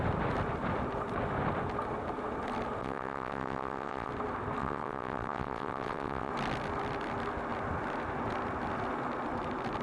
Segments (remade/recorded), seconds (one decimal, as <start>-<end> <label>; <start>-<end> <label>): 0.0-2.8 recorded; 2.8-4.1 remade; 4.1-4.6 recorded; 4.6-6.3 remade; 6.3-9.8 recorded